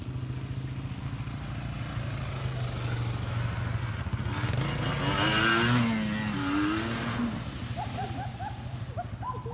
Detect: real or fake real